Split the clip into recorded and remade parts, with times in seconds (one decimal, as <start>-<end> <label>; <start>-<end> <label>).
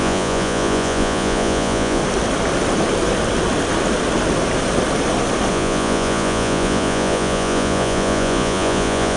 0.0-2.0 remade; 2.0-5.5 recorded; 5.5-9.2 remade